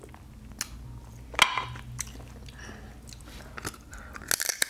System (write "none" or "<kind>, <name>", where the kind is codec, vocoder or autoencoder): none